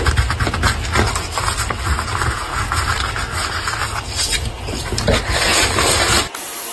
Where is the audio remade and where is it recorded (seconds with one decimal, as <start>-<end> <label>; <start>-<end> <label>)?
0.0-6.7 recorded